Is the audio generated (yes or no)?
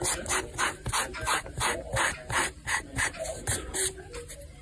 yes